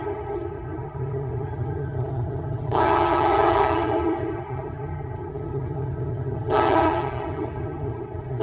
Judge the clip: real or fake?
fake